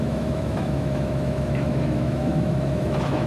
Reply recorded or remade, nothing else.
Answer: remade